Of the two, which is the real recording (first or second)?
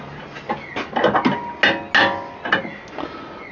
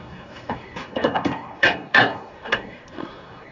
first